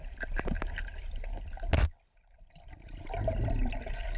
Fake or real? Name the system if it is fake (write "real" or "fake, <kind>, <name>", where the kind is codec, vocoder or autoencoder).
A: real